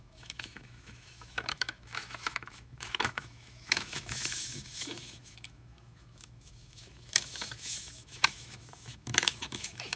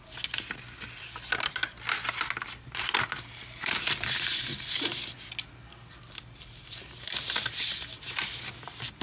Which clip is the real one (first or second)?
second